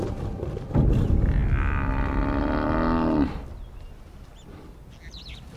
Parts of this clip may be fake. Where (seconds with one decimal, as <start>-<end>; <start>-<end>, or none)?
none